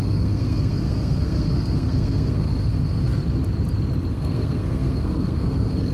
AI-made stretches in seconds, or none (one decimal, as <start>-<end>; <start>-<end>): 0.0-3.1; 4.1-5.9